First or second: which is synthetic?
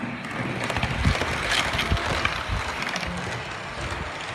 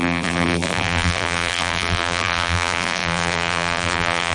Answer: second